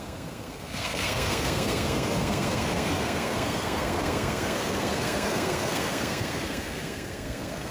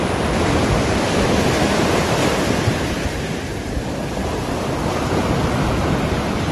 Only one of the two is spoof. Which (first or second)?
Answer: first